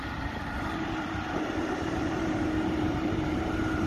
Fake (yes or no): yes